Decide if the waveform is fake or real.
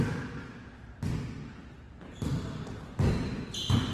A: real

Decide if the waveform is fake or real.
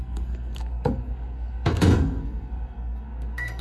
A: fake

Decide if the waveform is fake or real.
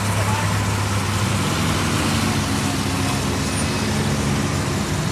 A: real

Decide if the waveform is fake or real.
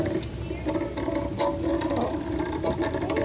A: real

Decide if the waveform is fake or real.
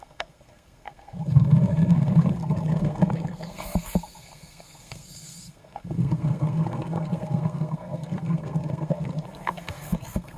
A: fake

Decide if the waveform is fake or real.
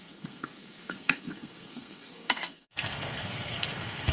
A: fake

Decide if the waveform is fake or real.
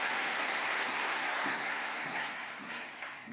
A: fake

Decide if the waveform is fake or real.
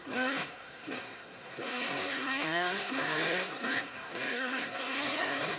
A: fake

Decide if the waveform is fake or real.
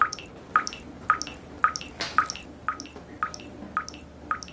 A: real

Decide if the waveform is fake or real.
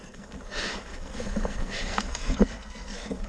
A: fake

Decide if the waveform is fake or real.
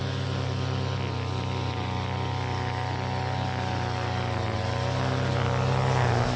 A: real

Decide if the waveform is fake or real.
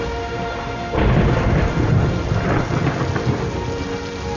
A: real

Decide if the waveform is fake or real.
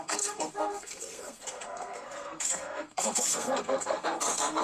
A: fake